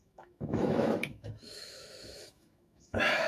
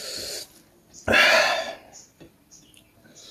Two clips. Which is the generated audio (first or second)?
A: first